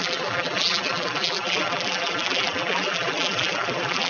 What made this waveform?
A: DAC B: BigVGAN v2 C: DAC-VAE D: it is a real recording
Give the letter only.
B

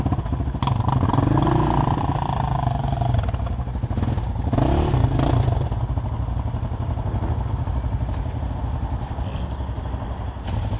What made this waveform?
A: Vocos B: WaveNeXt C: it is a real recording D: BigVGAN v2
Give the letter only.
C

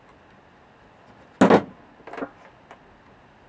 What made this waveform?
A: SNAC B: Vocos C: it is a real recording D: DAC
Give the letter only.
C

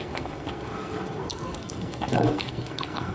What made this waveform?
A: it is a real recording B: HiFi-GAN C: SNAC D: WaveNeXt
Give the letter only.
C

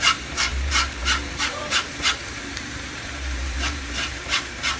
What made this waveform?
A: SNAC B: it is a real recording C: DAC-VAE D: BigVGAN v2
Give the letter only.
D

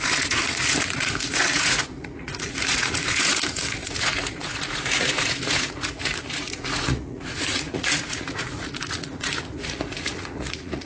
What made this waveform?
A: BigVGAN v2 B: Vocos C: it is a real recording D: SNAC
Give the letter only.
B